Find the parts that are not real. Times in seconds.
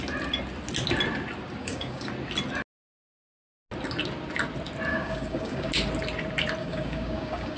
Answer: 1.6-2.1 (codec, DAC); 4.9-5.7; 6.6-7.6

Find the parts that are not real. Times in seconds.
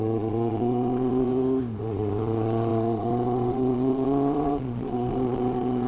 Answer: 0.0-1.3 (vocoder, Vocos); 1.8-5.9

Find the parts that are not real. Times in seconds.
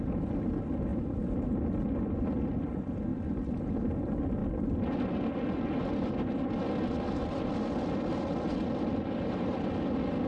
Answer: none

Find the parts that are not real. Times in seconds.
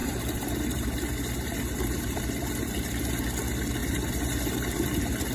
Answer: 0.0-3.2 (vocoder, BigVGAN v2); 3.8-5.3